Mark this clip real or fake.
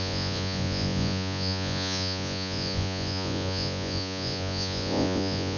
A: fake